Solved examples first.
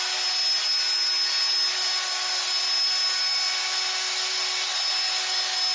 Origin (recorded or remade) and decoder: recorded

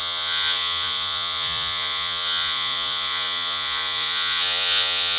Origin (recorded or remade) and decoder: remade, vocoder, Vocos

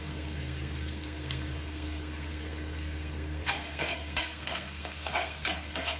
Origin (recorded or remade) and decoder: remade, codec, SNAC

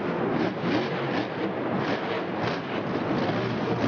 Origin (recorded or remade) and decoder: recorded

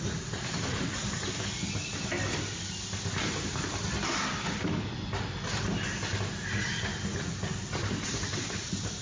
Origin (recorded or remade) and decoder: recorded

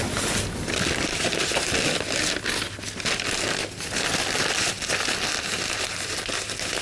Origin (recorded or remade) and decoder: recorded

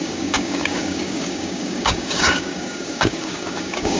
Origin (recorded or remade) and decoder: remade, codec, DAC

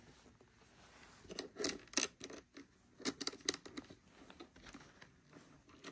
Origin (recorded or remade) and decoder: recorded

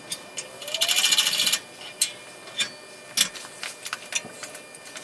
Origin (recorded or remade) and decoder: recorded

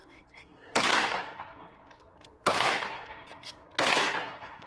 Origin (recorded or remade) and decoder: remade, codec, SNAC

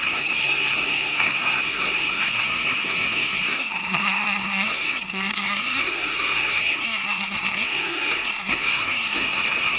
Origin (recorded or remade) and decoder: remade, codec, SNAC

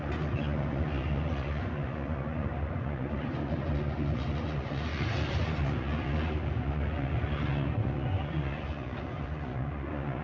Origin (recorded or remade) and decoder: remade, vocoder, Vocos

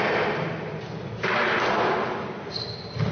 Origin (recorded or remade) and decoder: recorded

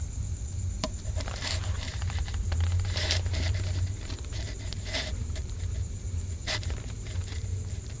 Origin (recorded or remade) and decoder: remade, vocoder, BigVGAN v2